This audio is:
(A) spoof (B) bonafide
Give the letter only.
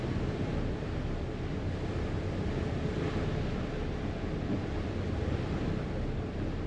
B